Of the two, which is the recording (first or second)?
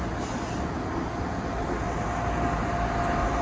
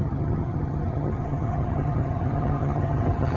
first